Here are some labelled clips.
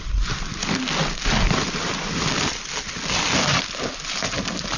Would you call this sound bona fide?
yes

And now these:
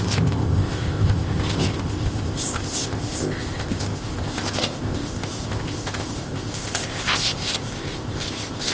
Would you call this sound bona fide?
no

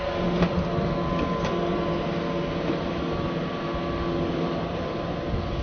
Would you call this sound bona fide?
yes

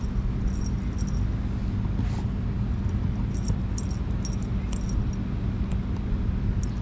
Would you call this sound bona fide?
yes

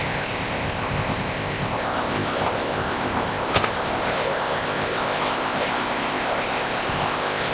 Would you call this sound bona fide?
no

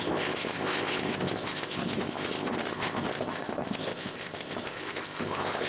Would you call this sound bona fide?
no